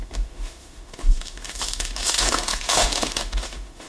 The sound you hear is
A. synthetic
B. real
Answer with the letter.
A